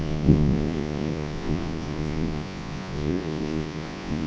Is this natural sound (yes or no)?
no